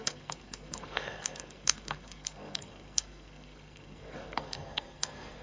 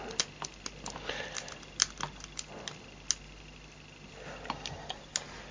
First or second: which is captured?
second